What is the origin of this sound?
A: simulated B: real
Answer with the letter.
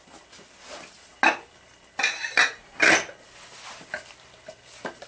B